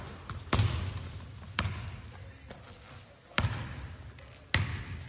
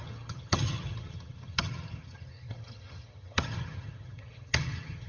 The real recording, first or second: first